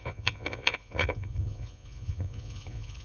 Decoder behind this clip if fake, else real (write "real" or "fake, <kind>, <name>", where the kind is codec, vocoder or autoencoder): fake, vocoder, Vocos